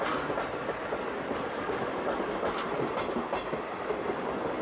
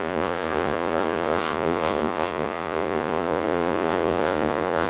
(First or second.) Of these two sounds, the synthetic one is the second